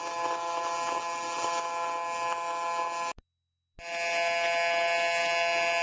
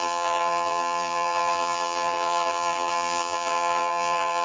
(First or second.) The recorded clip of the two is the first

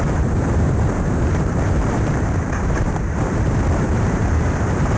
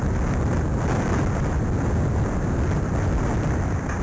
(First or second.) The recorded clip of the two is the second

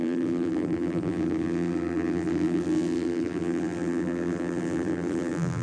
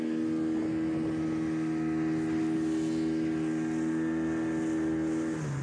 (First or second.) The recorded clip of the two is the second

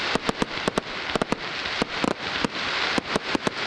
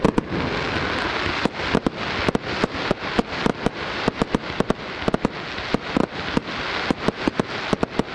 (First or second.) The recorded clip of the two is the second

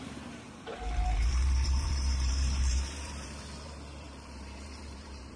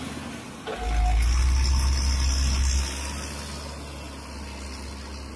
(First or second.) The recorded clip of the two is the second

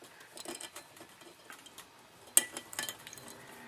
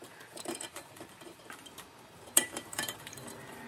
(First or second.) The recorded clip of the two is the first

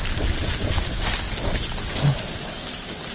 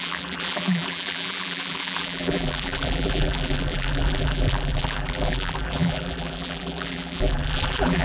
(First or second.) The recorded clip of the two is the first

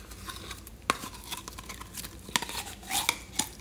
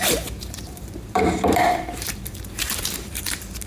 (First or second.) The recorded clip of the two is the first